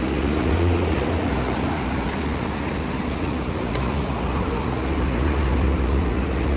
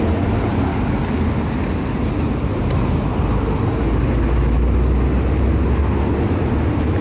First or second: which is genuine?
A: second